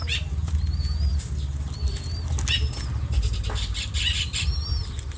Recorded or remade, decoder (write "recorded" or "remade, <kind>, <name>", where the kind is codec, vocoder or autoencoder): recorded